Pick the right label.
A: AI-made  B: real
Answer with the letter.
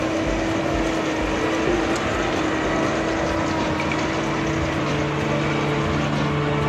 B